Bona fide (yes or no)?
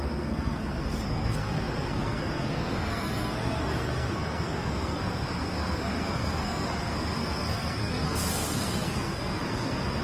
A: no